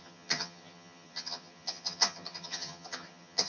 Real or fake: fake